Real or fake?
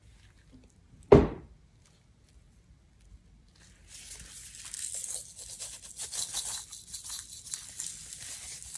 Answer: real